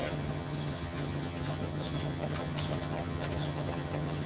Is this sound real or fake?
fake